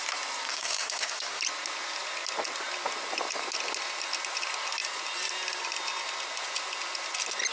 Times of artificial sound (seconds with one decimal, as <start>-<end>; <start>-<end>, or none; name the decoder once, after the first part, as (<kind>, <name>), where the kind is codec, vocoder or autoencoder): 0.5-1.4 (codec, SNAC)